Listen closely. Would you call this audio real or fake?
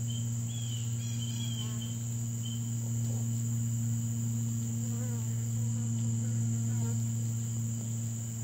fake